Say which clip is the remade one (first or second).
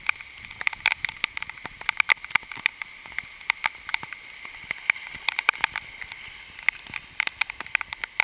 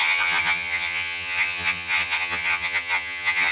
second